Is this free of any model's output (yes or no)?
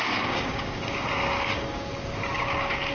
no